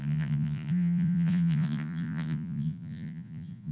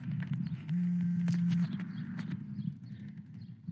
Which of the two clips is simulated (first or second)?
first